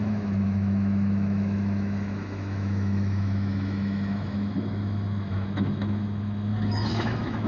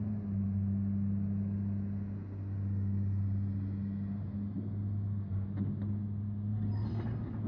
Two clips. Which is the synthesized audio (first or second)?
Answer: first